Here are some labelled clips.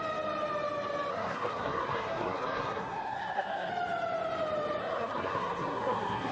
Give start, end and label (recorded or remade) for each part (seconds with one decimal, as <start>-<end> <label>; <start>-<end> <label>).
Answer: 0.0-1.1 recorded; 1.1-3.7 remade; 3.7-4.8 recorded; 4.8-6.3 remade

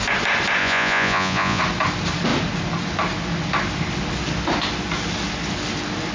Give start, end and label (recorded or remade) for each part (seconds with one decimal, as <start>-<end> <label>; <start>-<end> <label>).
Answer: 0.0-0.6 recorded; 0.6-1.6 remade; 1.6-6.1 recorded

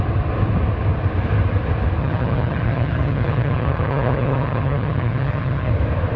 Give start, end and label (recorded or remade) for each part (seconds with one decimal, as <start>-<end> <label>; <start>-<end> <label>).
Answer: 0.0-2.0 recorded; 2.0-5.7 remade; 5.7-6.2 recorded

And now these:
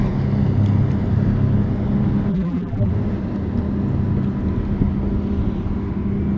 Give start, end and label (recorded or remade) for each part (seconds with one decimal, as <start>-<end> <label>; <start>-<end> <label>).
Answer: 0.0-2.3 recorded; 2.3-2.9 remade; 2.9-6.4 recorded

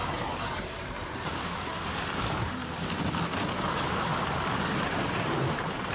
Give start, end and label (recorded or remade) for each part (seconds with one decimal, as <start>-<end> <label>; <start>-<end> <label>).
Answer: 0.0-0.5 recorded; 0.5-2.6 remade; 2.6-3.6 recorded; 3.6-4.1 remade; 4.1-4.7 recorded; 4.7-5.9 remade